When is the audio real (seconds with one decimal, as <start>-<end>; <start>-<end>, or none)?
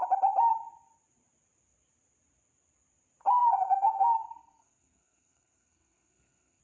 0.0-3.4